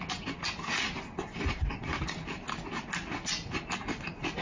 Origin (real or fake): real